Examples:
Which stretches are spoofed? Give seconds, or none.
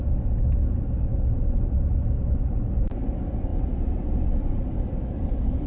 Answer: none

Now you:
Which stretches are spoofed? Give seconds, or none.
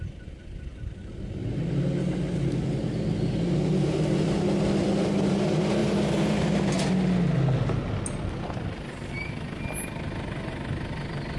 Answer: 5.8-6.4 (vocoder, BigVGAN v2)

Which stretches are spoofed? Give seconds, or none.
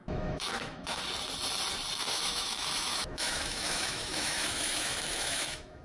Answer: 0.0-1.0 (autoencoder, DAC-VAE); 2.0-5.8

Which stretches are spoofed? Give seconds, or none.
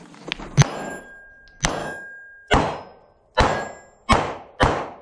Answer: 1.8-2.5 (autoencoder, DAC-VAE)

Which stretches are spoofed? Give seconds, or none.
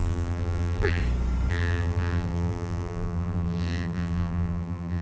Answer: 0.0-1.0 (vocoder, BigVGAN v2); 1.5-5.0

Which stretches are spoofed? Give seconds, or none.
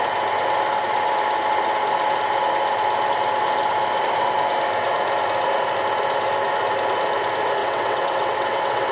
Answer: 7.6-8.9 (vocoder, WaveNeXt)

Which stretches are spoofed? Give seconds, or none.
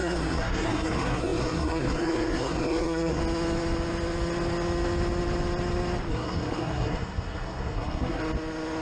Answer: 0.0-3.2 (codec, SNAC); 6.1-8.2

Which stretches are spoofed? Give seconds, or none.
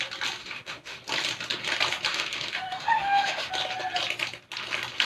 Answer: 0.4-1.0 (autoencoder, DAC-VAE); 2.1-3.5